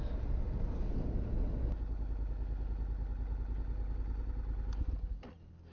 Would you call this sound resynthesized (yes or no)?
no